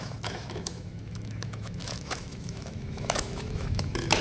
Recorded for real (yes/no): no